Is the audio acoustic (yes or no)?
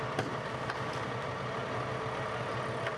yes